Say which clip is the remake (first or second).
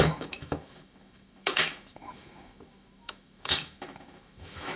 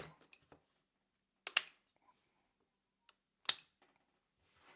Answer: first